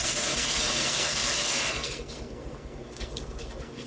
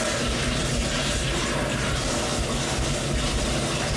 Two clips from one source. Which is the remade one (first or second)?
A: first